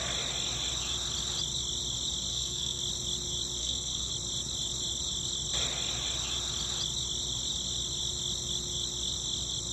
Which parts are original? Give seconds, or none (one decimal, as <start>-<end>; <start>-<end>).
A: 0.0-2.3; 2.8-3.6; 4.1-9.7